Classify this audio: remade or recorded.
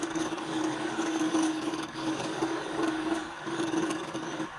remade